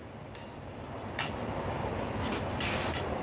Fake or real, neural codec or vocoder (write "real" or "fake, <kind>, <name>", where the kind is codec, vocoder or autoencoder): fake, vocoder, BigVGAN v2